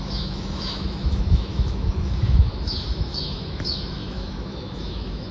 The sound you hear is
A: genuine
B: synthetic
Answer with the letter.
B